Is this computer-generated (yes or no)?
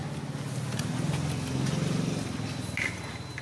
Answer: no